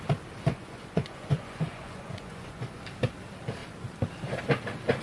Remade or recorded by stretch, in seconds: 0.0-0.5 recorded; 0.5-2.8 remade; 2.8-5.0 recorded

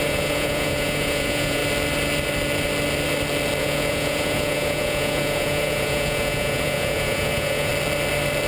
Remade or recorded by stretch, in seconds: 0.0-1.6 remade; 1.6-3.6 recorded; 3.6-7.7 remade; 7.7-8.5 recorded

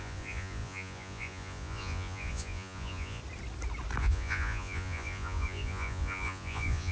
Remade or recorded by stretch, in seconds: 0.0-3.2 remade; 3.2-4.0 recorded; 4.0-6.9 remade

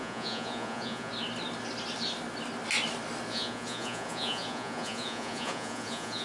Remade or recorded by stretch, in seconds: 0.0-1.1 remade; 1.1-3.3 recorded; 3.3-6.2 remade